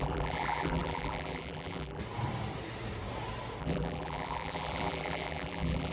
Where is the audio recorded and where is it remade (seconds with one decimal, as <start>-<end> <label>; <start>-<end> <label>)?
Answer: 0.0-2.0 remade; 2.0-3.6 recorded; 3.6-5.9 remade